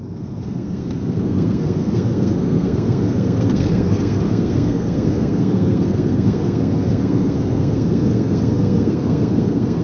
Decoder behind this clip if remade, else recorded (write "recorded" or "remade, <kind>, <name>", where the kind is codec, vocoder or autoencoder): remade, codec, SNAC